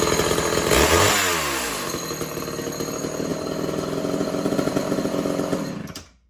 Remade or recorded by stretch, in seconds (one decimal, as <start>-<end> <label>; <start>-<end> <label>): 0.0-6.3 recorded